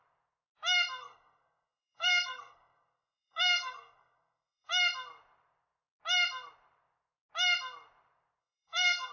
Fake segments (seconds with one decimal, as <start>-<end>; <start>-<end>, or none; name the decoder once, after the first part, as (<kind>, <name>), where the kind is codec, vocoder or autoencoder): 1.0-4.7 (codec, SNAC); 8.4-9.1